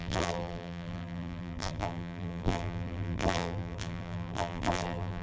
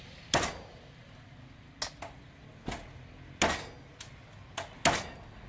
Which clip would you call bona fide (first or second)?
second